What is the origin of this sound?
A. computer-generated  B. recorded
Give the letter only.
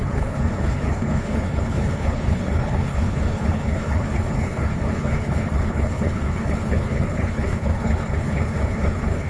A